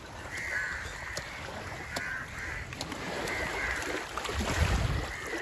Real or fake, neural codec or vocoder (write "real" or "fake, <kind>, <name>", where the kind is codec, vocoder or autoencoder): fake, vocoder, BigVGAN v2